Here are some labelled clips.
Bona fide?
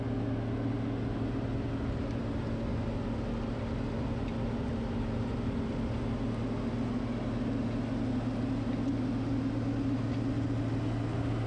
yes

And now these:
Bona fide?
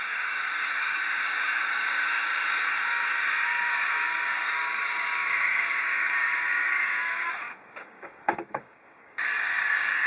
no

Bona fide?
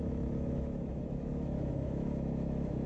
no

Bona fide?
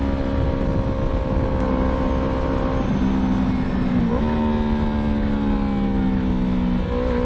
yes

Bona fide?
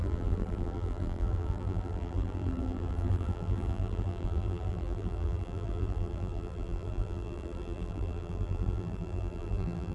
no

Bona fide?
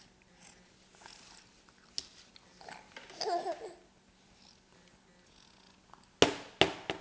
yes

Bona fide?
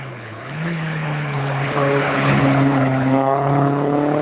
no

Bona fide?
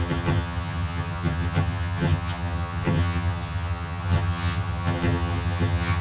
no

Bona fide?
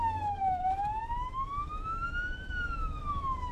no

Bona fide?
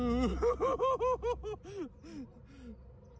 yes